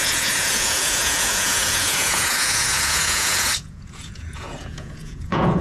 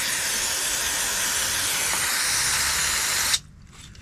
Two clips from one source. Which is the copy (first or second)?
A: first